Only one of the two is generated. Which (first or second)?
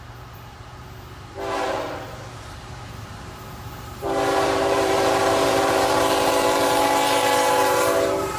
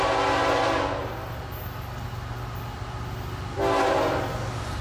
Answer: first